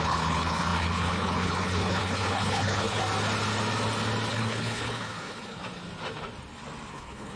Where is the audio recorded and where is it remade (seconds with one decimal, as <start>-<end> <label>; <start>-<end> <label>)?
0.0-3.0 remade; 3.0-4.3 recorded; 4.3-5.6 remade; 5.6-6.9 recorded; 6.9-7.4 remade